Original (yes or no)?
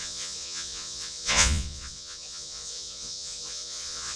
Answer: no